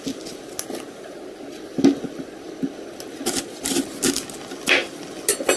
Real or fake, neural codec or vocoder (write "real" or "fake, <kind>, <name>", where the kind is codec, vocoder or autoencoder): real